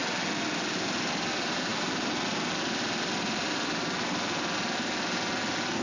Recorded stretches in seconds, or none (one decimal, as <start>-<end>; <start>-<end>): 0.0-5.8

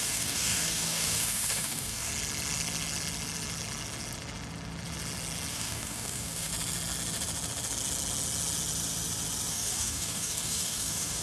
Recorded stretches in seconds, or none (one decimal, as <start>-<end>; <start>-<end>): 2.1-5.5; 6.5-9.5

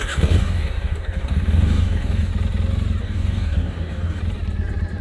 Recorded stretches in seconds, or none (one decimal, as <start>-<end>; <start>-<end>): 2.3-3.0; 4.2-5.0

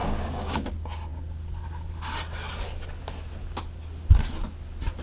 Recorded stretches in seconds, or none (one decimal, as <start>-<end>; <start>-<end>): 0.7-5.0

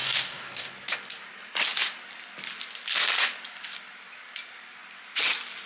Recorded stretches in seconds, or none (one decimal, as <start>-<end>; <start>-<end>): 0.7-5.7

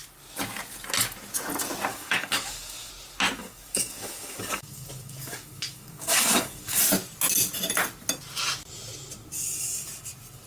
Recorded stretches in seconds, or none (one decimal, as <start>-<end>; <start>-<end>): 0.0-1.9; 2.9-3.4; 6.8-10.5